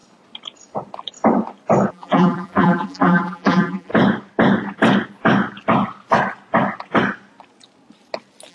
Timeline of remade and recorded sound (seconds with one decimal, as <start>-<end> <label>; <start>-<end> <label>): 0.0-1.9 recorded; 1.9-3.9 remade; 3.9-8.5 recorded